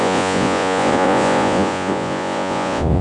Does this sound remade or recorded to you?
remade